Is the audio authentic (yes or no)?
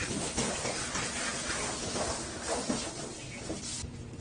yes